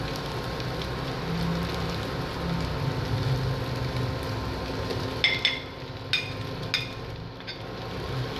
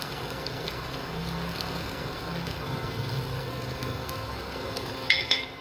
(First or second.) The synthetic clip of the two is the second